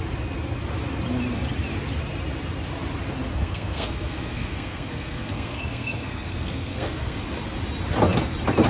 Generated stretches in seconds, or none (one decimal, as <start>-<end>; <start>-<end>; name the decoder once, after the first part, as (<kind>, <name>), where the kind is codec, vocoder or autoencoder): 3.3-7.2 (codec, SNAC)